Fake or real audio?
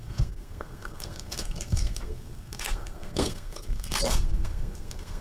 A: fake